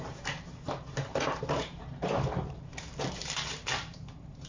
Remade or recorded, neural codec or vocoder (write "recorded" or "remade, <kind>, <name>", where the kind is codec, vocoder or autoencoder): remade, vocoder, BigVGAN v2